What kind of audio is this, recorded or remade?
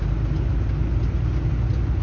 recorded